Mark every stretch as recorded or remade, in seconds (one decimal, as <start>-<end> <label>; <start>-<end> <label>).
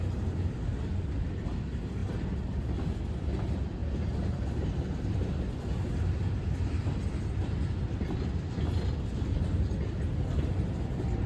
0.0-2.0 recorded; 2.0-2.6 remade; 2.6-11.3 recorded